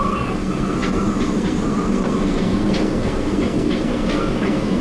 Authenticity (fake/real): fake